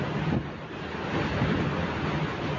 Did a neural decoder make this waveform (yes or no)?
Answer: no